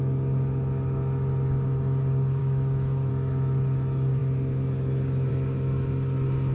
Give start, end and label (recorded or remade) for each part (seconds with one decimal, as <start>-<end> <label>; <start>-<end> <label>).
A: 0.0-2.4 recorded; 2.4-3.1 remade; 3.1-6.5 recorded